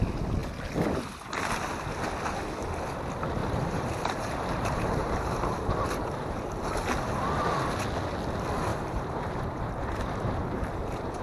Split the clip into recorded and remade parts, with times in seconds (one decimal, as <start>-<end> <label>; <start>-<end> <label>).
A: 0.0-3.4 recorded; 3.4-6.6 remade; 6.6-8.7 recorded; 8.7-11.2 remade